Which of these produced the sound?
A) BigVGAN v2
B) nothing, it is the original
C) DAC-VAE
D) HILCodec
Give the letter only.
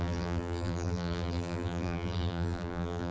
A